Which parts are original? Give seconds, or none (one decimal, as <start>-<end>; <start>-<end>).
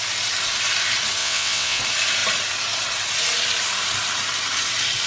0.0-1.2; 1.8-5.1